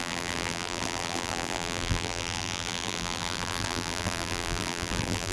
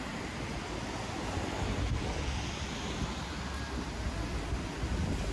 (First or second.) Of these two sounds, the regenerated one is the first